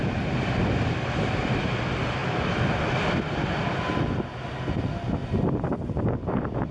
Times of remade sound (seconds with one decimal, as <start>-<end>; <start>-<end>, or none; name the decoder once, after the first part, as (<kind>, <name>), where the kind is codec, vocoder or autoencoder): 0.0-1.6 (vocoder, BigVGAN v2); 5.2-6.7